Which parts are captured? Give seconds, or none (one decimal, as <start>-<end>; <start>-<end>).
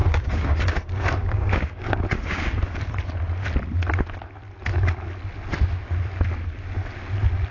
2.8-7.5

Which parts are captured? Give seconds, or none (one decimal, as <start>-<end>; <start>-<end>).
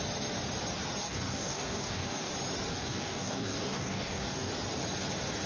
0.0-1.0; 2.3-2.7; 4.5-5.5